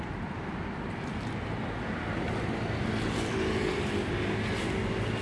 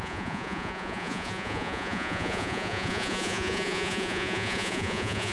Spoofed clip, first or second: second